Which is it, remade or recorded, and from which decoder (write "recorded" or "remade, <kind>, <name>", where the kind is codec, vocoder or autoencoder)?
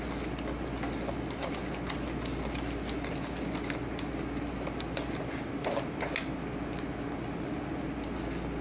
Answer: recorded